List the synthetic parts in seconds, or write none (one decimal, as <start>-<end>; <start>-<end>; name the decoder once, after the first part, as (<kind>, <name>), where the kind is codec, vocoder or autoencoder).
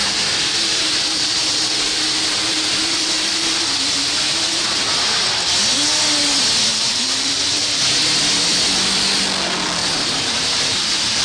0.0-4.9 (vocoder, BigVGAN v2); 6.7-7.8; 9.8-11.2